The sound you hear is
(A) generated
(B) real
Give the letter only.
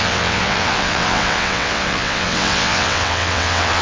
A